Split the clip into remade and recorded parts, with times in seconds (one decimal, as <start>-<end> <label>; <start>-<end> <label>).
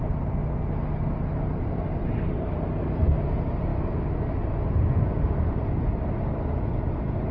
0.0-0.4 remade; 0.4-1.6 recorded; 1.6-3.7 remade; 3.7-5.2 recorded; 5.2-7.3 remade